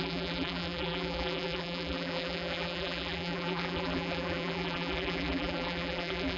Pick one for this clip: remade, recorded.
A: remade